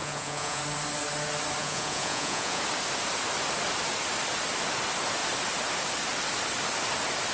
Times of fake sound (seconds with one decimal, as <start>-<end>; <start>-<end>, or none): 0.0-0.6; 1.6-2.6